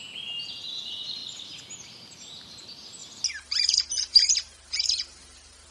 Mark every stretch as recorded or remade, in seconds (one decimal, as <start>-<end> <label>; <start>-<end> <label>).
0.0-5.7 recorded